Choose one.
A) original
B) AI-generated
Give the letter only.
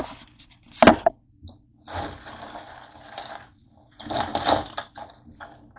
A